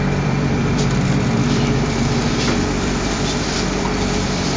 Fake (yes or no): yes